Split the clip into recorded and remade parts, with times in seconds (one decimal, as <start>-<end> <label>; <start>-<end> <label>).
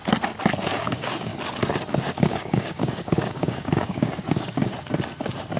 0.0-0.6 recorded; 0.6-1.3 remade; 1.3-2.1 recorded; 2.1-4.7 remade; 4.7-5.6 recorded